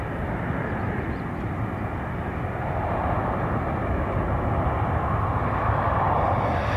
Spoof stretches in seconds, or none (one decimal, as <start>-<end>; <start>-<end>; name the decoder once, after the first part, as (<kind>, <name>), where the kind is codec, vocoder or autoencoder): 5.4-6.8 (vocoder, BigVGAN v2)